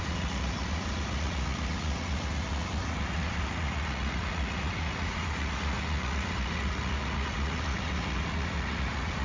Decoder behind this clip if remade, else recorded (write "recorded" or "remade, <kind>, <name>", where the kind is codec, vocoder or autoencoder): remade, vocoder, Vocos